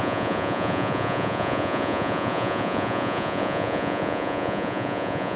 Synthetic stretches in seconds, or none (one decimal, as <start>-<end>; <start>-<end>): 0.0-5.4